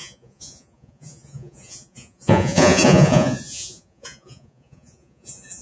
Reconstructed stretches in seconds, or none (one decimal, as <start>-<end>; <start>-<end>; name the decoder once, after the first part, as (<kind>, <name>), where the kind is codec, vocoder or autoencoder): 0.0-5.6 (vocoder, Vocos)